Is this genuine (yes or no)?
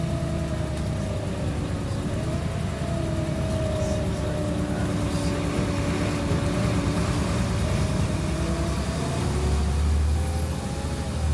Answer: yes